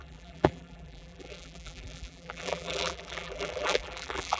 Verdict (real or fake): fake